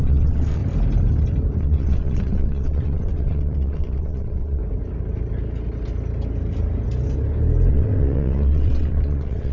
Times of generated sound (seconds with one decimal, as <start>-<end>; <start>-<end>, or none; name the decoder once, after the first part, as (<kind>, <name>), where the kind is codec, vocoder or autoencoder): 0.0-0.6 (vocoder, WaveNeXt); 1.6-4.6; 7.7-9.5

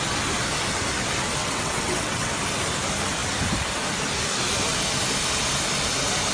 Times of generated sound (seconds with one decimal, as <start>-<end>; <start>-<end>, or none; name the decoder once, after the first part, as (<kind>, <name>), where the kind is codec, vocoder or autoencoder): 1.4-2.3 (vocoder, WaveNeXt)